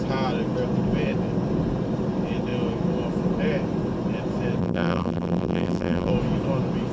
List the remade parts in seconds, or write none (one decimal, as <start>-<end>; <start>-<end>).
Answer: 4.6-6.1

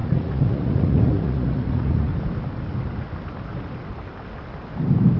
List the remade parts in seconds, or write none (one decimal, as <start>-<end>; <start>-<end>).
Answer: 0.0-2.1

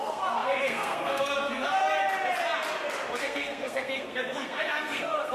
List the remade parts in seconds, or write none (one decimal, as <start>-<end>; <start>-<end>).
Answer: 0.0-1.8; 3.2-5.3

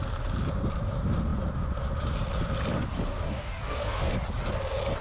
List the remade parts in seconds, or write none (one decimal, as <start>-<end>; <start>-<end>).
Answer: 3.1-4.1

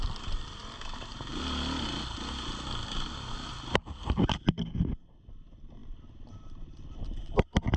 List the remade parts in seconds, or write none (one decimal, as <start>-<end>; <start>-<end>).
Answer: none